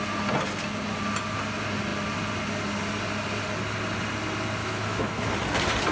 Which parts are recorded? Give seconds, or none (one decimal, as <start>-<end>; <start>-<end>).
0.0-4.6; 5.3-5.9